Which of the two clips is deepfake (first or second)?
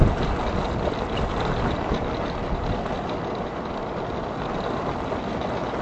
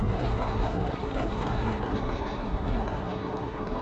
second